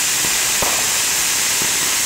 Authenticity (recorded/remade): remade